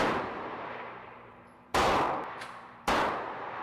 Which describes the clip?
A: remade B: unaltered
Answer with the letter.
A